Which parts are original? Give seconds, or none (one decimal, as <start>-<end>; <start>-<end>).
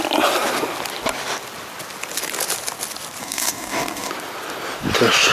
0.0-3.2; 4.1-5.3